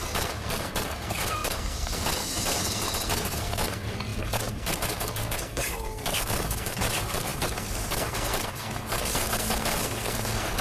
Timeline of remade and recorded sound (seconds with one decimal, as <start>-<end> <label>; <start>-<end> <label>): 0.0-10.6 remade